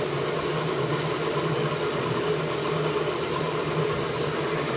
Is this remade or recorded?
recorded